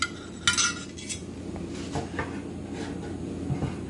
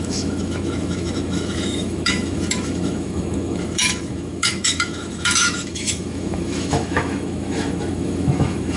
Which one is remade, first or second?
second